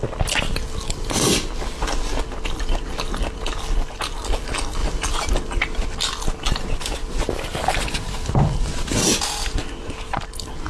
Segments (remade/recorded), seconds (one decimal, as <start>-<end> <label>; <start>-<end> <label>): 0.0-4.8 recorded; 4.8-6.2 remade; 6.2-10.7 recorded